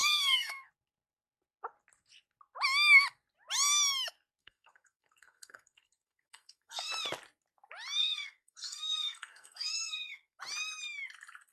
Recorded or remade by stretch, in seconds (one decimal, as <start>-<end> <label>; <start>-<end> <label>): 0.0-0.7 remade; 0.7-4.4 recorded; 4.4-6.9 remade; 6.9-8.0 recorded; 8.0-10.4 remade; 10.4-11.5 recorded

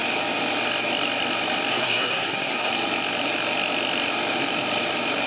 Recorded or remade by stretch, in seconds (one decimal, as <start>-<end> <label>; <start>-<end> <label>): 0.0-1.7 recorded; 1.7-2.7 remade; 2.7-5.3 recorded

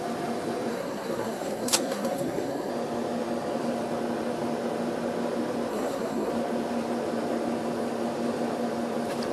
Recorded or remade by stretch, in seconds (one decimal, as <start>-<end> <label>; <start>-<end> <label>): 0.0-0.7 recorded; 0.7-2.7 remade; 2.7-5.7 recorded; 5.7-6.3 remade; 6.3-9.3 recorded

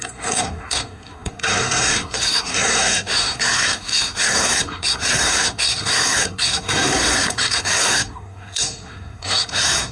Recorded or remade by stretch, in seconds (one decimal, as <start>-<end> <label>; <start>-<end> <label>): 0.0-9.9 remade

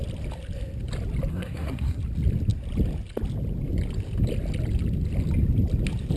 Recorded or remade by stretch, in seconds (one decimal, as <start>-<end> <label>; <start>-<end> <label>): 0.0-1.3 recorded; 1.3-2.0 remade; 2.0-6.2 recorded

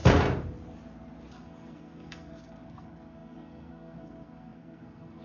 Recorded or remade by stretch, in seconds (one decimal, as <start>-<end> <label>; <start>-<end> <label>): 0.0-1.3 recorded; 1.3-5.2 remade